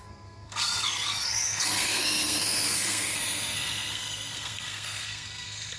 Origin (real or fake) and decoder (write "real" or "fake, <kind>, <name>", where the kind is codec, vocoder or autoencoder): fake, codec, SNAC